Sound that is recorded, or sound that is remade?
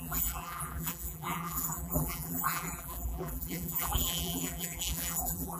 remade